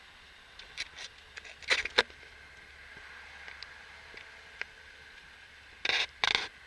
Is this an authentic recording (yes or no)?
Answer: yes